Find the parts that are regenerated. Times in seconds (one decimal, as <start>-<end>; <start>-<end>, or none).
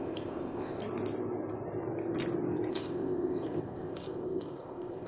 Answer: 0.0-0.8; 2.7-5.1